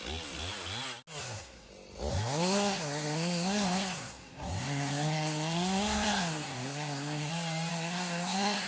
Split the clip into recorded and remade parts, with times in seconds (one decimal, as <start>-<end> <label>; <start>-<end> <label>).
0.0-1.2 recorded; 1.2-1.7 remade; 1.7-2.1 recorded; 2.1-7.3 remade; 7.3-7.7 recorded; 7.7-8.7 remade